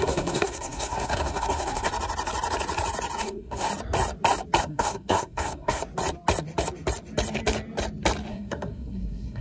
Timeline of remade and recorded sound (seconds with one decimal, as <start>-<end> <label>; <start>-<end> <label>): 0.0-1.9 remade; 1.9-3.2 recorded; 3.2-3.7 remade; 3.7-4.6 recorded; 4.6-5.8 remade; 5.8-8.3 recorded; 8.3-9.4 remade